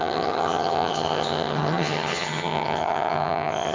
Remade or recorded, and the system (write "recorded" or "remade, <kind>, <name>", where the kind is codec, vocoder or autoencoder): remade, vocoder, HiFi-GAN